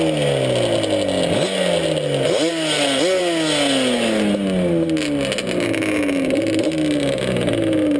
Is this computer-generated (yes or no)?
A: no